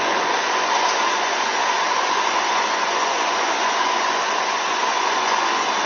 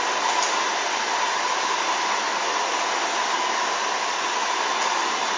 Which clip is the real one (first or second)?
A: second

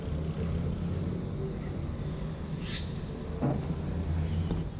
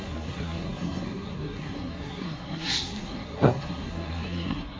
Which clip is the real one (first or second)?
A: first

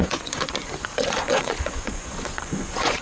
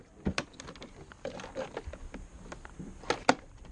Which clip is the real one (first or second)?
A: second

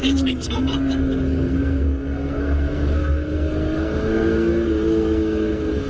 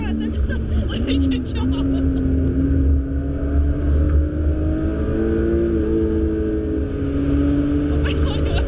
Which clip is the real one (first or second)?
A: second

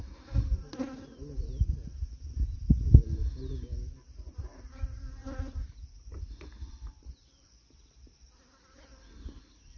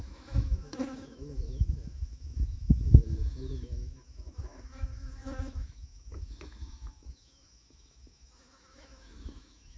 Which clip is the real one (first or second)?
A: first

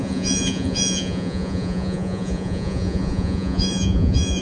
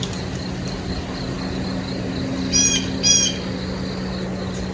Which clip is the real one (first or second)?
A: second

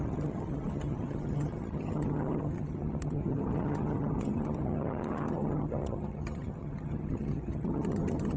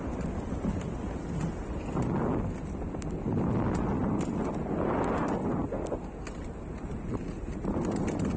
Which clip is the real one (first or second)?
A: second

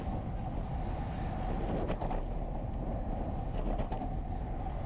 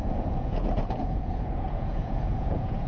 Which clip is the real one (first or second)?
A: first